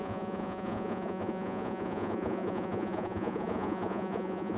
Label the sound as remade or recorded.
remade